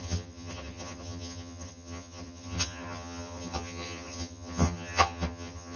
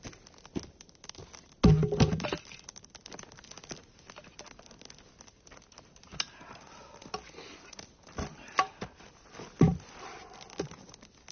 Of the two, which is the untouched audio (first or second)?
second